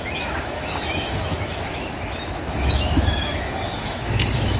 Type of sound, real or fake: fake